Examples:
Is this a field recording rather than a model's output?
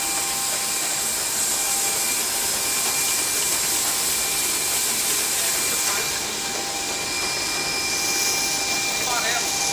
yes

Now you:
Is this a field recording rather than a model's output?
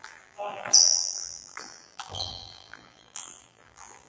no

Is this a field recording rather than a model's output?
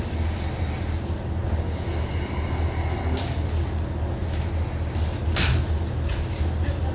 yes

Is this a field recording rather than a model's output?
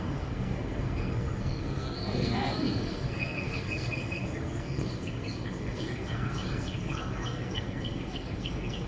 no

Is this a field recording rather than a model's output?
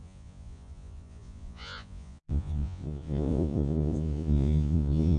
no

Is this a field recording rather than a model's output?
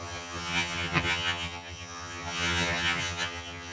no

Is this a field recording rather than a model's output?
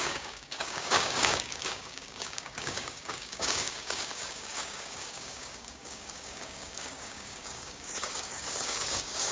no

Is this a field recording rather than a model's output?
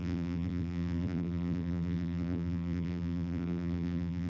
no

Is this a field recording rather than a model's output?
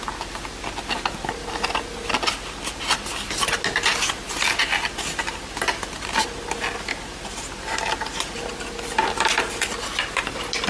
yes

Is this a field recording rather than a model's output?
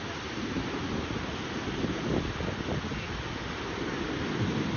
yes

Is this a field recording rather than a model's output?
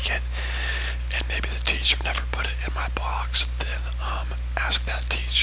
yes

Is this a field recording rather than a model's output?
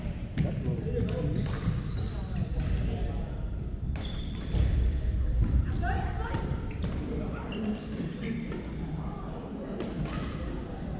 no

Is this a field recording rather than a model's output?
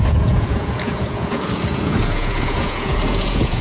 no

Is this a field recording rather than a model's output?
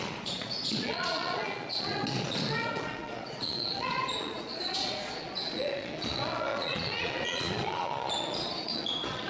no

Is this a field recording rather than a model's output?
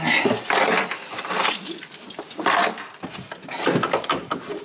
yes